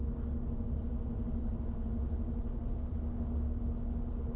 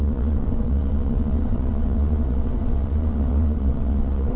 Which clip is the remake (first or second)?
second